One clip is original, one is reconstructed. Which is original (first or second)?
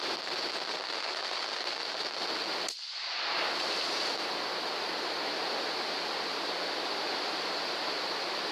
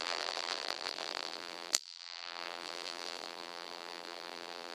first